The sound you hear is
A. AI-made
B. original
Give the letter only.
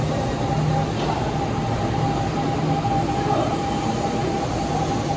B